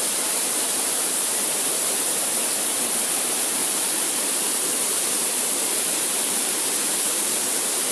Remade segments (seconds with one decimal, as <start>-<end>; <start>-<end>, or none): 0.0-2.2; 2.9-7.9